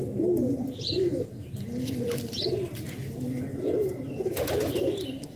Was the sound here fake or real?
real